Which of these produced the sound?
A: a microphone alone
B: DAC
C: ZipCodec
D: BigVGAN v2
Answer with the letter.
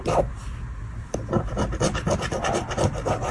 A